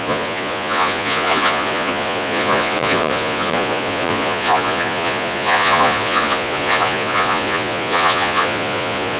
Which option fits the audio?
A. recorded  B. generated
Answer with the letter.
B